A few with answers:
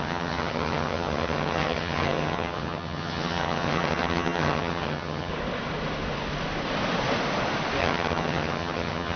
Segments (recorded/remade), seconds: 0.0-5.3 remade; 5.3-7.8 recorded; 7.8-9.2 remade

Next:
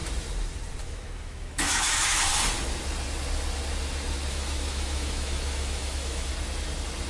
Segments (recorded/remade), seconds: 0.0-0.8 recorded; 0.8-2.3 remade; 2.3-4.3 recorded; 4.3-6.3 remade; 6.3-7.1 recorded

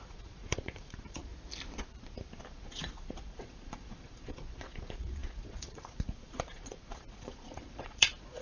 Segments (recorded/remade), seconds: 0.0-1.3 remade; 1.3-2.5 recorded; 2.5-8.4 remade

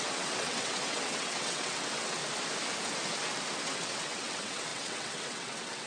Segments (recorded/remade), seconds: 0.0-2.2 remade; 2.2-3.6 recorded; 3.6-5.9 remade

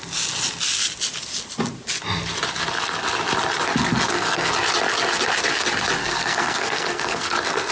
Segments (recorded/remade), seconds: 0.0-3.9 recorded; 3.9-4.5 remade; 4.5-6.0 recorded; 6.0-7.7 remade

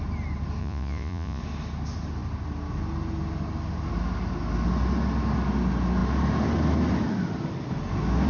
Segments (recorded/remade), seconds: 0.0-0.6 recorded; 0.6-1.4 remade; 1.4-8.3 recorded